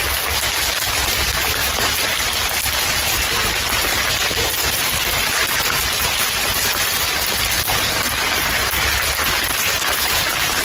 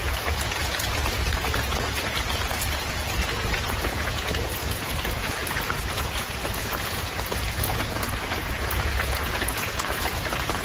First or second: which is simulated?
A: second